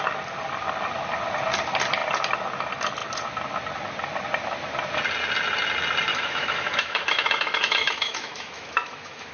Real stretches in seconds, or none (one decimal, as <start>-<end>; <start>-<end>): 0.0-6.1